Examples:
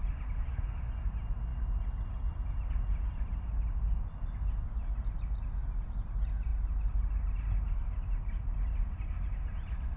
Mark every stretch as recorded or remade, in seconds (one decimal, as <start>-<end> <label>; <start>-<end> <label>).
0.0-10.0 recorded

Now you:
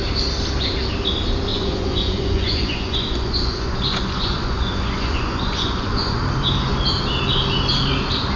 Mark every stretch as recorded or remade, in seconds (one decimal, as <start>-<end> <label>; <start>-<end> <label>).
0.0-1.5 recorded; 1.5-6.2 remade; 6.2-8.4 recorded

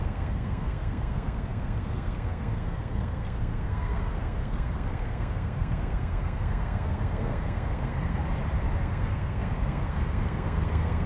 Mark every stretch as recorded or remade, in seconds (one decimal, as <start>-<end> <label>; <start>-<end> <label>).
0.0-8.2 remade; 8.2-8.8 recorded; 8.8-11.1 remade